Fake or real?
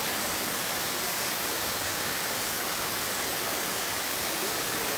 fake